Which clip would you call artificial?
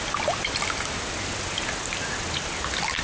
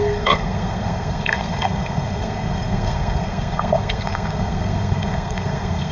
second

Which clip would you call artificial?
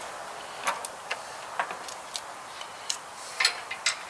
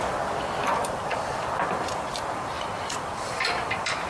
second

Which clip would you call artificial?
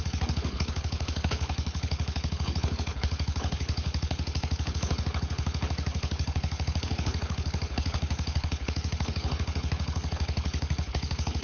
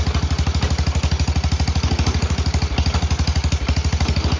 first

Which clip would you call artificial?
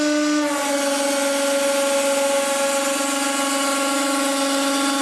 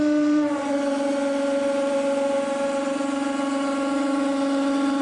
second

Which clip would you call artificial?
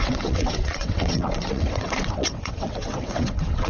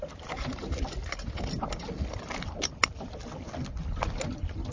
first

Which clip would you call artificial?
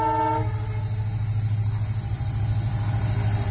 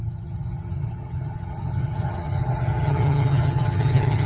second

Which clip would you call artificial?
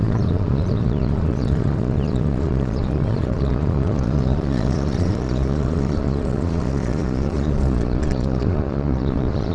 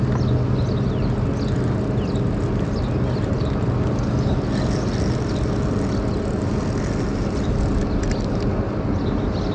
first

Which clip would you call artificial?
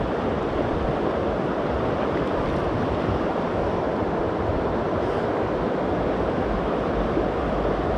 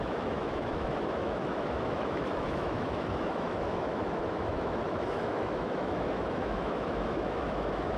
second